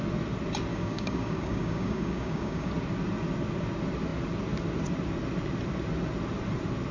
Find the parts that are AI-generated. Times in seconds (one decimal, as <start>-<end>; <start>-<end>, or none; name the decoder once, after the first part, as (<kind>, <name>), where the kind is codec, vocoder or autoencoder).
0.7-2.7 (codec, DAC)